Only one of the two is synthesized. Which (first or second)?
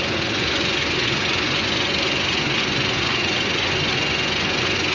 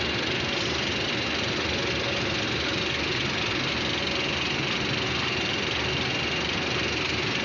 first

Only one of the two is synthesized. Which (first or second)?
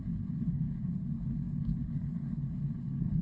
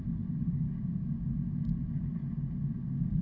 first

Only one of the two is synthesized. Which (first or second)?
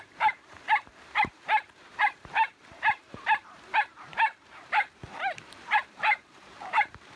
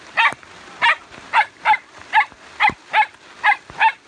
first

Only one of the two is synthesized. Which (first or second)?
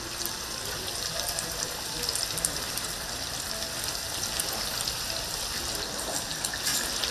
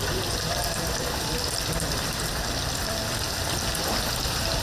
second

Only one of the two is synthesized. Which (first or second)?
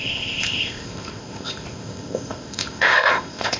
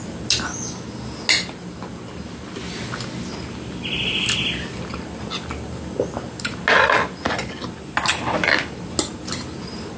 first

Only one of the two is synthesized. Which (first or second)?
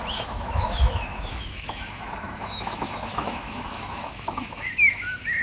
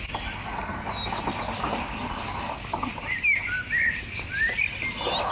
first